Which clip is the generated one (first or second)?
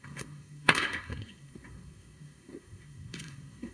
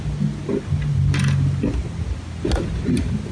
first